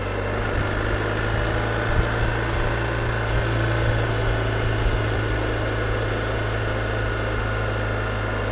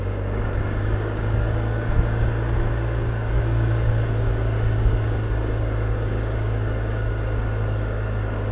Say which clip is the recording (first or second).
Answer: first